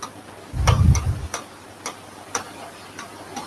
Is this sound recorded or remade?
recorded